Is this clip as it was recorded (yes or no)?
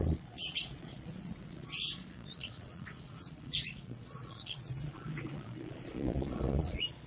no